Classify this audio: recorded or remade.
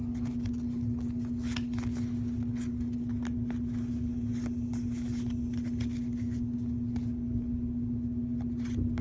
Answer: recorded